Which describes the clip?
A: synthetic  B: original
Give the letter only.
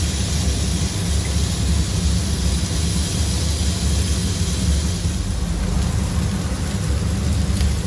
B